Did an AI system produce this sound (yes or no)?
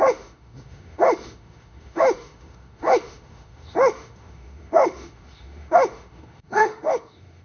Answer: yes